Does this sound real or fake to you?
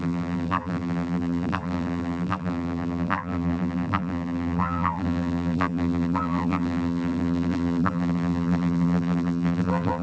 fake